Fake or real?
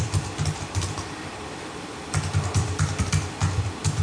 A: real